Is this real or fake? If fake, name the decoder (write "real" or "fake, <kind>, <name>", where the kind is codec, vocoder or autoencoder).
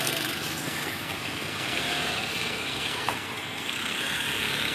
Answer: fake, codec, SNAC